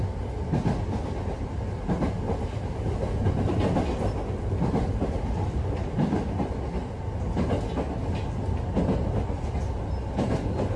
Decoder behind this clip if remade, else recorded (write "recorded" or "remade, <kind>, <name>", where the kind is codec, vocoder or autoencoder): recorded